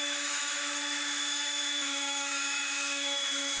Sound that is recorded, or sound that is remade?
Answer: remade